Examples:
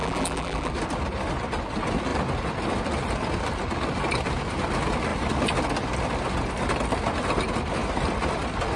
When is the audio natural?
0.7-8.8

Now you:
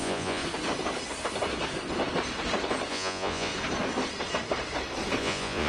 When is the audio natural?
0.4-2.9; 3.5-5.2